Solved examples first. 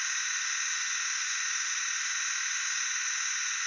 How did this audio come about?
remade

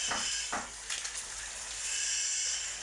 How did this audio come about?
recorded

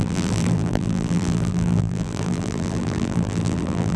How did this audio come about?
remade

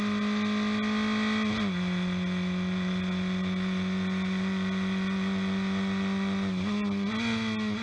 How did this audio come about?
recorded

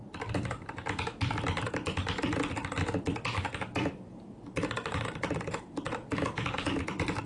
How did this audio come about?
remade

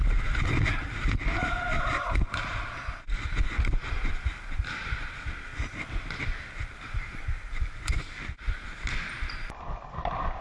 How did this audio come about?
recorded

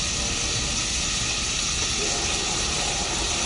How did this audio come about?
recorded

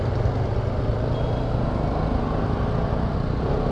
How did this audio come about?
recorded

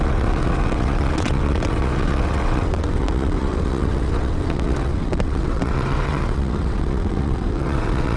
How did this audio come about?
remade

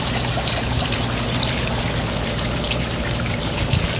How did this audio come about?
remade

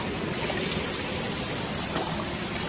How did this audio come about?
recorded